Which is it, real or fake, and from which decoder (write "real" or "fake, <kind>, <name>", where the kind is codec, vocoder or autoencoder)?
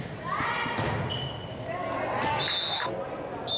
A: real